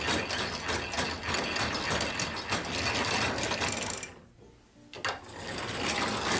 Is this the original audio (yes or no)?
yes